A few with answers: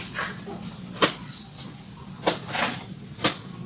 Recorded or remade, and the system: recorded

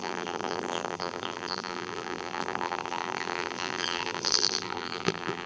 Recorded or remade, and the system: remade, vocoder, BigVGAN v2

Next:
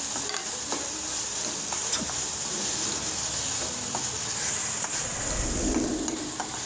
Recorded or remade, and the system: remade, vocoder, BigVGAN v2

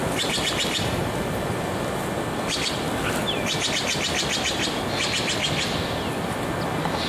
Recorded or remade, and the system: recorded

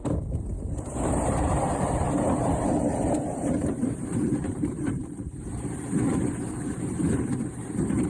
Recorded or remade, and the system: remade, vocoder, BigVGAN v2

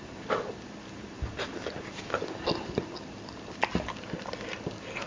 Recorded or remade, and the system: remade, vocoder, BigVGAN v2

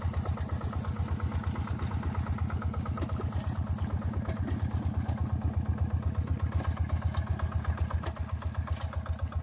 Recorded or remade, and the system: recorded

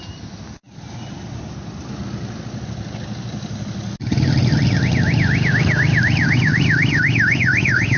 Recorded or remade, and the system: recorded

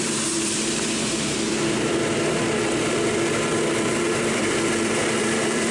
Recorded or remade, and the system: remade, vocoder, BigVGAN v2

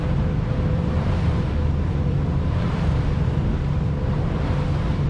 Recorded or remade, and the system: remade, vocoder, BigVGAN v2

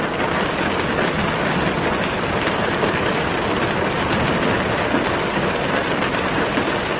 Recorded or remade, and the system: recorded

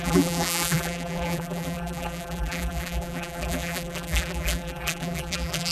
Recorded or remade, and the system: remade, vocoder, BigVGAN v2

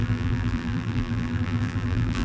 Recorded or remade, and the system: remade, vocoder, BigVGAN v2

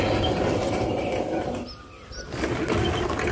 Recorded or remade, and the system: recorded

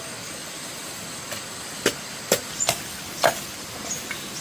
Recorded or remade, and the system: recorded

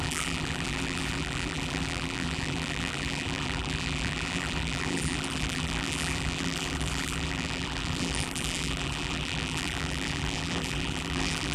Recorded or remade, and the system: remade, vocoder, BigVGAN v2